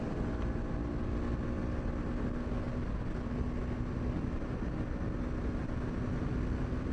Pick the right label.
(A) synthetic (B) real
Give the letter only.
B